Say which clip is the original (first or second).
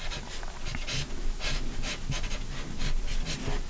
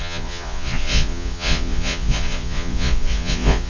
first